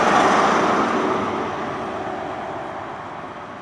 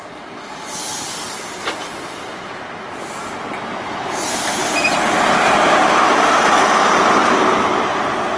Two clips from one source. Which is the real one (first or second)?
first